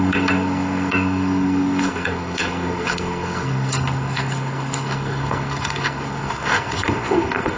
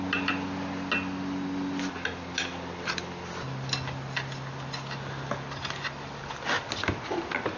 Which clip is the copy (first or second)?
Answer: first